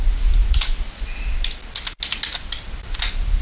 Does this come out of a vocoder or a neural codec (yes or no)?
no